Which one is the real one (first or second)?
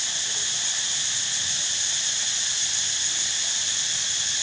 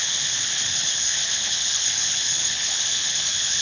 first